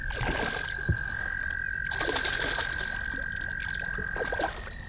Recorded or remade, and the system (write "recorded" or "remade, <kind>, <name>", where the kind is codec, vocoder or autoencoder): recorded